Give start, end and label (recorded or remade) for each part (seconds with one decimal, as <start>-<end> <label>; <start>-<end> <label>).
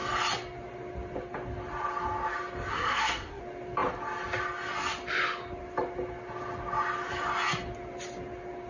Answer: 0.0-2.7 recorded; 2.7-3.4 remade; 3.4-8.7 recorded